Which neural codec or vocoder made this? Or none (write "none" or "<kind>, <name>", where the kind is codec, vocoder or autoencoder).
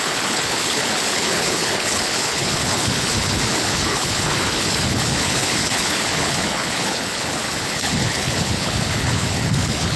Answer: codec, HILCodec